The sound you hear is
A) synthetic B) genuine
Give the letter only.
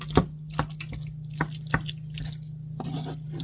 B